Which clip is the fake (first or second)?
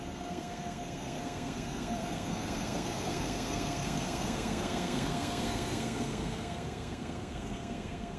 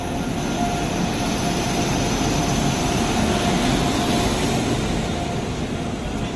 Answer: first